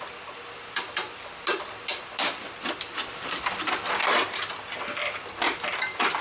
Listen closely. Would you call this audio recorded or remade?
recorded